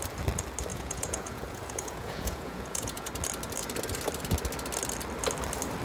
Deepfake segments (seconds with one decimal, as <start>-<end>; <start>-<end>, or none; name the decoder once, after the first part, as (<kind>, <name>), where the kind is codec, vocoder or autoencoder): 0.7-3.1 (vocoder, Vocos)